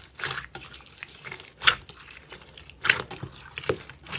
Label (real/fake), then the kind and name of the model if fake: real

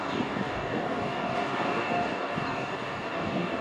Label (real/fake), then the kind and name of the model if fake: fake, codec, DAC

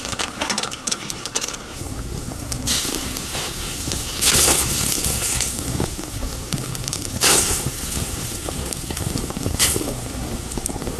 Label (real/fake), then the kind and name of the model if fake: fake, codec, SNAC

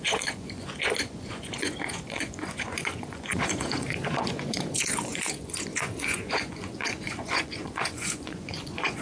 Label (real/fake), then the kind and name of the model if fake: fake, vocoder, Vocos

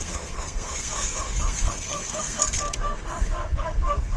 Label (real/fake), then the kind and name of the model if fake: fake, codec, SNAC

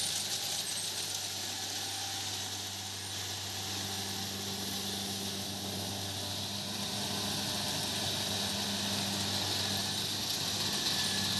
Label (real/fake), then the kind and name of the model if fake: real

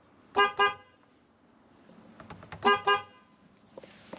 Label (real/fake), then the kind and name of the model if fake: real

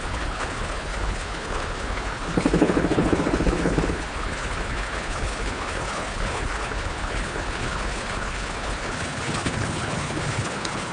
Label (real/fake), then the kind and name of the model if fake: fake, codec, HILCodec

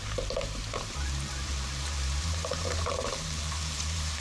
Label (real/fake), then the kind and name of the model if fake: fake, vocoder, BigVGAN v2